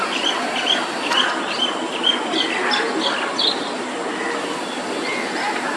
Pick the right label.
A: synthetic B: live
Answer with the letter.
B